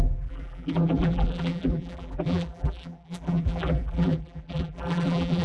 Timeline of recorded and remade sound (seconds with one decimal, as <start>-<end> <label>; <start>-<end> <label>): 0.0-5.4 remade